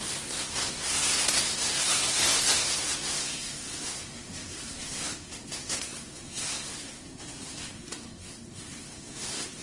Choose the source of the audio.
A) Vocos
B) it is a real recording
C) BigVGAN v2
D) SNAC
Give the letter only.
D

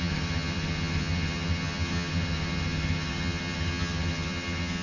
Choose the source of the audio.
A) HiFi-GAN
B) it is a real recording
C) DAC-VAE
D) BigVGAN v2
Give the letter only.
A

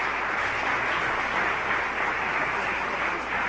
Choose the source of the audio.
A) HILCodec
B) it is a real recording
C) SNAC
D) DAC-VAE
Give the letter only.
B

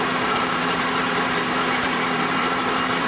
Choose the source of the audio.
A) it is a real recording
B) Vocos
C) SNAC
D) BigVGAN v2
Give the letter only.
D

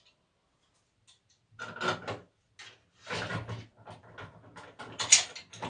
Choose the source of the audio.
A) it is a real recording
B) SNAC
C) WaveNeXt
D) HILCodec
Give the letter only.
A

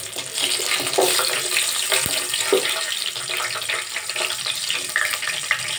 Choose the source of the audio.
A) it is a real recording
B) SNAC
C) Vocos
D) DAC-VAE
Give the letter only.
A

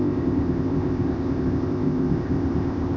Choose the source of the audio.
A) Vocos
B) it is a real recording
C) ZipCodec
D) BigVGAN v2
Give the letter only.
C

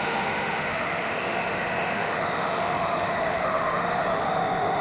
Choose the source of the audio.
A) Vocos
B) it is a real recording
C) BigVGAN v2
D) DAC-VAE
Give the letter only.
D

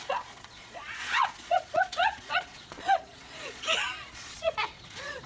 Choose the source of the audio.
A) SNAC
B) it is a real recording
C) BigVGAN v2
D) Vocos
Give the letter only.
D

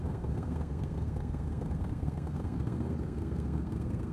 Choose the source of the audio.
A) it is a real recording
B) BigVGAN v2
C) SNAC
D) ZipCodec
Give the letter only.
C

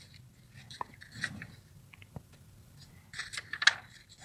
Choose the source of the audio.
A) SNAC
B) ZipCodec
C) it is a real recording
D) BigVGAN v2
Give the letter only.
C